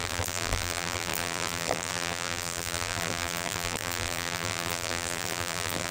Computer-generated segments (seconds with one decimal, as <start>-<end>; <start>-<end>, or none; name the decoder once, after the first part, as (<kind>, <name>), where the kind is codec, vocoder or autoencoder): 0.0-5.9 (vocoder, BigVGAN v2)

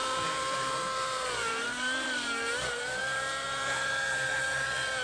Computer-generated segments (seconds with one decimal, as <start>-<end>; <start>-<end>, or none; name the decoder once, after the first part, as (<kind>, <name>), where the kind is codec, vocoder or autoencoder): 0.0-5.0 (vocoder, BigVGAN v2)

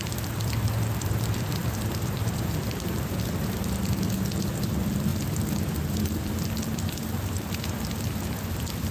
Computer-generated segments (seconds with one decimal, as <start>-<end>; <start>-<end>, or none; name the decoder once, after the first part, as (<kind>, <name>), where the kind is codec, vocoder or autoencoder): 0.0-8.9 (vocoder, BigVGAN v2)

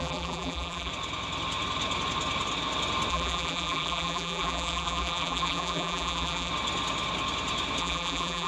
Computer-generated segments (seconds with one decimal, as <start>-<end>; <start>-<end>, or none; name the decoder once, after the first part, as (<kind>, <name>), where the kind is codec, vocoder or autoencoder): 0.0-0.9 (vocoder, BigVGAN v2); 3.1-6.5; 7.8-8.5

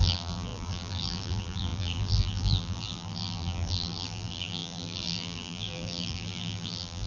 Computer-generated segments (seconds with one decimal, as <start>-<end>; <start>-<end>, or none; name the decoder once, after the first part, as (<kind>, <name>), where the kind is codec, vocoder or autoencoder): 0.0-7.1 (vocoder, BigVGAN v2)